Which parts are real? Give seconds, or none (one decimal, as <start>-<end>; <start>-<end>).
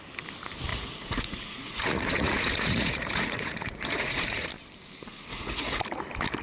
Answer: 0.0-0.7; 4.5-5.3; 5.8-6.4